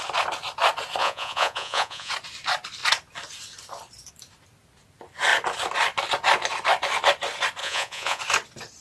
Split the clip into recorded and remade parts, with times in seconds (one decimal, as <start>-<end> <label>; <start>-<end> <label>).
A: 0.0-1.0 recorded; 1.0-2.1 remade; 2.1-7.6 recorded; 7.6-8.2 remade; 8.2-8.8 recorded